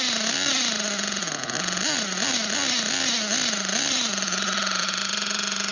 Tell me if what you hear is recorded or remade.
recorded